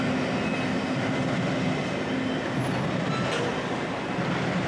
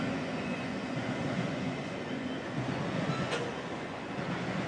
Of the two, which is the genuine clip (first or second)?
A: first